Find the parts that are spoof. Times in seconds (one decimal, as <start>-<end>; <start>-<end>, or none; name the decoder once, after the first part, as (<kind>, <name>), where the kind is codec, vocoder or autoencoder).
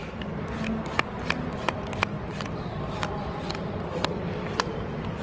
none